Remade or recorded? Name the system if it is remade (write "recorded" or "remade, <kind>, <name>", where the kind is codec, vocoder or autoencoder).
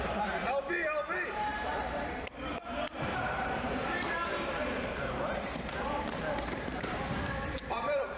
remade, vocoder, BigVGAN v2